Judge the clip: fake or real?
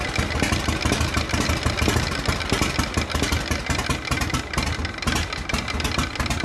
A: real